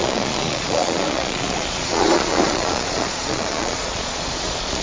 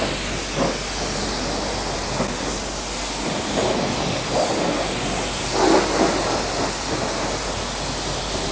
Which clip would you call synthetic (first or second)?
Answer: first